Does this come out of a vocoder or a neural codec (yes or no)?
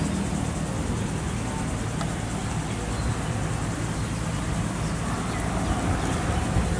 no